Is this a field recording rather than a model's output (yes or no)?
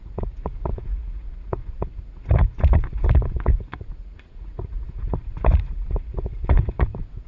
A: no